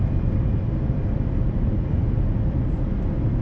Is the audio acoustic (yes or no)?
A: yes